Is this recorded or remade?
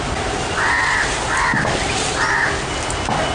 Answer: recorded